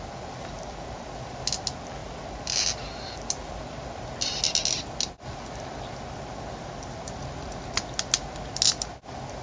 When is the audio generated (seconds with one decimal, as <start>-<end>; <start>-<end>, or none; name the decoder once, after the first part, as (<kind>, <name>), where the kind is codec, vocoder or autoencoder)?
none